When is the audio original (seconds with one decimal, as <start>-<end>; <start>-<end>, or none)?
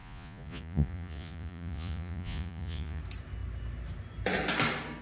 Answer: 3.0-5.0